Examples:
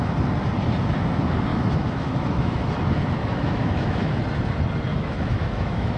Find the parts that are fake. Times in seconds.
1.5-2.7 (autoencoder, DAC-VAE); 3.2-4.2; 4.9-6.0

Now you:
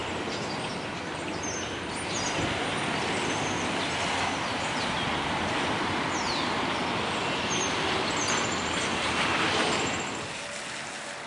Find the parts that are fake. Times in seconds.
none

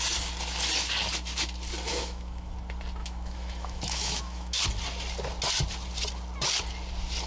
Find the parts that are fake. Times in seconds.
1.9-2.5 (autoencoder, DAC-VAE); 3.0-4.6

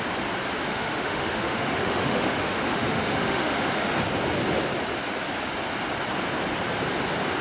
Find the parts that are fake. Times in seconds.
0.7-3.9 (autoencoder, DAC-VAE)

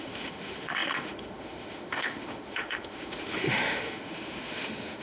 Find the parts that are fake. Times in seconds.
0.0-5.0 (autoencoder, DAC-VAE)

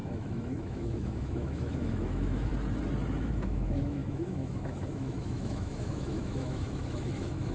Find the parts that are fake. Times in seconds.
0.0-2.5 (autoencoder, DAC-VAE); 3.2-7.5